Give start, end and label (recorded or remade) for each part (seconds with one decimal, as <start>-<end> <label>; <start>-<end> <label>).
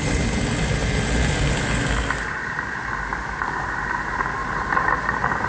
0.0-0.8 remade; 0.8-3.4 recorded; 3.4-5.5 remade